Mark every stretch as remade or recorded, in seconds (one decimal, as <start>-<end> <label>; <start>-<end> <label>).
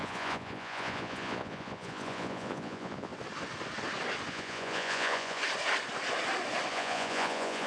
0.0-3.1 remade; 3.1-4.3 recorded; 4.3-5.4 remade; 5.4-6.7 recorded; 6.7-7.7 remade